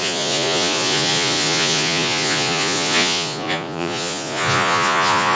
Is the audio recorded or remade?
remade